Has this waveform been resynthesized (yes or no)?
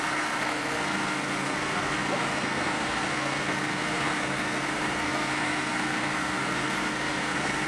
yes